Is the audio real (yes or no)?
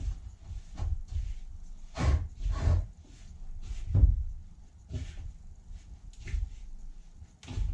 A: yes